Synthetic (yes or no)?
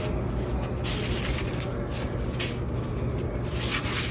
no